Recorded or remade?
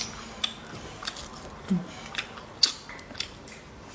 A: recorded